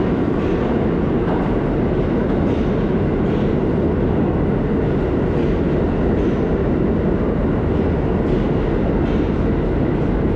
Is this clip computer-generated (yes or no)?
no